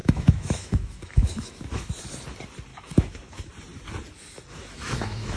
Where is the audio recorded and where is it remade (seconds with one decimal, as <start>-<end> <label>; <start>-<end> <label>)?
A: 0.0-1.9 remade; 1.9-2.7 recorded; 2.7-3.5 remade; 3.5-4.5 recorded; 4.5-5.4 remade